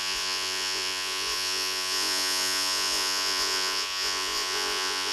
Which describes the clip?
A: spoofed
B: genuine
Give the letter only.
A